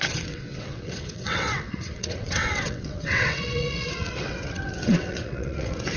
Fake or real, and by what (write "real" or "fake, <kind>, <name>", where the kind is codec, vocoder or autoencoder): fake, vocoder, WaveNeXt